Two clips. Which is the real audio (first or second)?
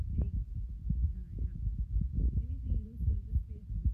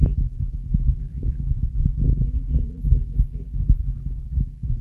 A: first